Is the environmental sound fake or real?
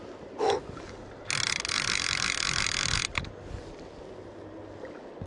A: real